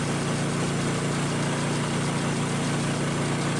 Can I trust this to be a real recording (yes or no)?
yes